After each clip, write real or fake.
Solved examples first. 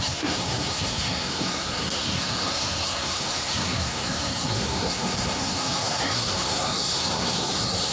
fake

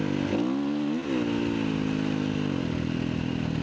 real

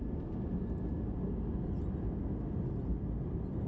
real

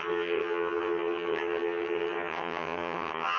fake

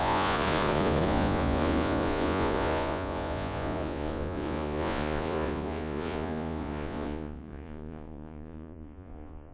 fake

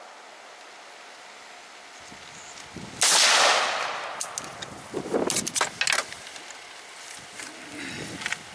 real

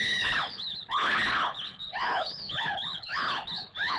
fake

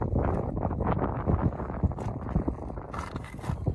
real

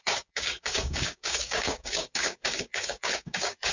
fake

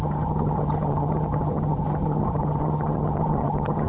fake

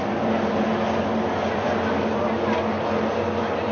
real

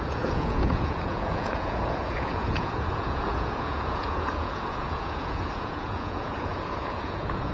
fake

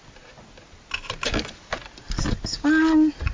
real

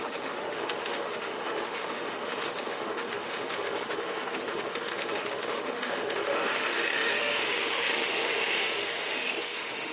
fake